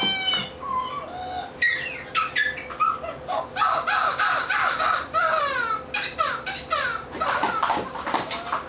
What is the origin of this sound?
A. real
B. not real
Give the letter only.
A